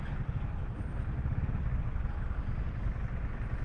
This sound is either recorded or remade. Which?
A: recorded